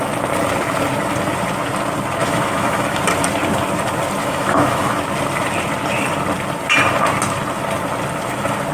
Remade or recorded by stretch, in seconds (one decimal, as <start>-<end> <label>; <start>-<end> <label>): 0.0-2.2 recorded; 2.2-3.0 remade; 3.0-4.2 recorded; 4.2-5.0 remade; 5.0-8.7 recorded